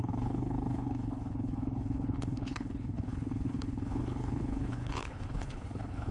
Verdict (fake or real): fake